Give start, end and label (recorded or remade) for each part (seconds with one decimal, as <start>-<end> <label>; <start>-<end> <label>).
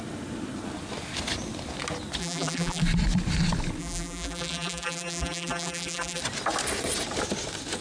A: 0.0-2.2 recorded; 2.2-2.8 remade; 2.8-3.8 recorded; 3.8-6.2 remade; 6.2-7.8 recorded